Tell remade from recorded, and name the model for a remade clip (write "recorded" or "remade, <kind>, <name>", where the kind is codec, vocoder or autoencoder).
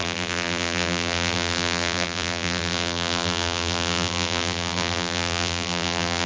remade, vocoder, BigVGAN v2